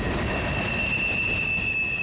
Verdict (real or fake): real